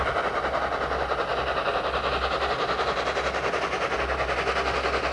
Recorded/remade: recorded